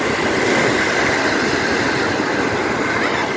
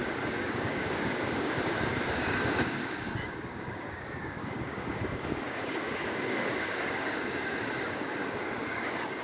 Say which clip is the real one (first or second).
first